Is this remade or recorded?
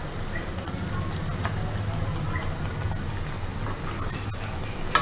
recorded